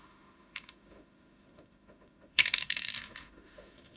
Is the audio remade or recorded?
remade